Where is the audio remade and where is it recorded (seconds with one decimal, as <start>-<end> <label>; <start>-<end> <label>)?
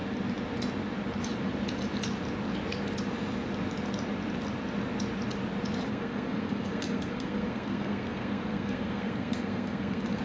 0.0-5.9 recorded; 5.9-10.2 remade